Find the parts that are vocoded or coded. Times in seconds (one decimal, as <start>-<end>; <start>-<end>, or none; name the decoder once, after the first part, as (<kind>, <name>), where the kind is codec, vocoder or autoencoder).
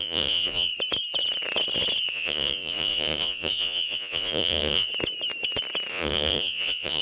0.0-0.7 (vocoder, Vocos); 2.1-4.9; 5.9-7.0